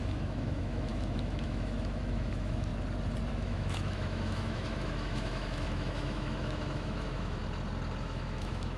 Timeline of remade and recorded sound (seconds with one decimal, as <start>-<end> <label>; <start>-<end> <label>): 0.0-2.7 remade; 2.7-3.3 recorded; 3.3-7.4 remade; 7.4-8.0 recorded; 8.0-8.8 remade